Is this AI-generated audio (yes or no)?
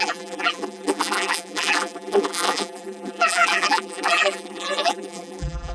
yes